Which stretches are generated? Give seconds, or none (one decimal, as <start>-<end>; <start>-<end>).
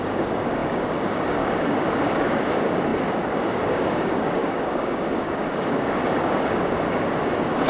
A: 0.0-7.7